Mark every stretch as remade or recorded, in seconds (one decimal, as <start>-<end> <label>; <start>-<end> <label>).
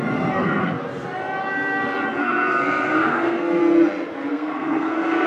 0.0-0.6 remade; 0.6-2.2 recorded; 2.2-3.6 remade; 3.6-4.3 recorded; 4.3-5.3 remade